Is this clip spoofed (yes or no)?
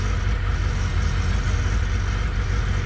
no